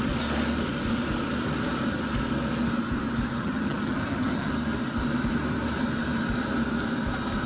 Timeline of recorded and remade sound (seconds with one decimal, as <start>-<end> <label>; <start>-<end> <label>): 0.0-3.4 recorded; 3.4-4.5 remade; 4.5-7.5 recorded